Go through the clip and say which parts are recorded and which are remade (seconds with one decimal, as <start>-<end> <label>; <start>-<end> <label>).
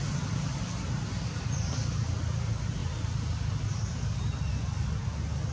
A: 0.0-5.5 recorded